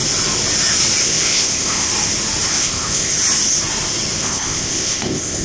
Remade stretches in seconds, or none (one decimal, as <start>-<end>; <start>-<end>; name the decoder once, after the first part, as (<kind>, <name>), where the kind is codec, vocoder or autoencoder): 1.0-1.9 (codec, ZipCodec); 2.5-3.1; 4.2-5.4